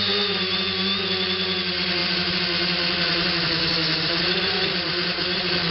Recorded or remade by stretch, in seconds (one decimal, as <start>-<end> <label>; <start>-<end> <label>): 0.0-2.0 recorded; 2.0-5.7 remade